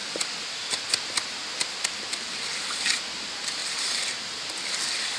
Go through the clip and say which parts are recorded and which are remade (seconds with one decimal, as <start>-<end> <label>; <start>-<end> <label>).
0.0-3.6 recorded; 3.6-4.6 remade; 4.6-5.2 recorded